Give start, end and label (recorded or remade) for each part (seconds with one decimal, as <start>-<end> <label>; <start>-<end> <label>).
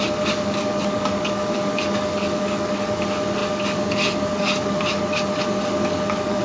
0.0-6.4 remade